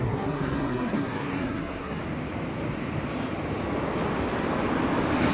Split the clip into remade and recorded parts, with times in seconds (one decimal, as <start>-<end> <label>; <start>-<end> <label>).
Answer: 0.0-2.0 remade; 2.0-5.3 recorded